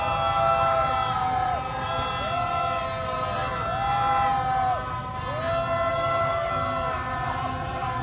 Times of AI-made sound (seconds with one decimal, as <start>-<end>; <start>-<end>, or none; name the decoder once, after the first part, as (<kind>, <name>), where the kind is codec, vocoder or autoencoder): 5.9-6.5 (codec, SNAC)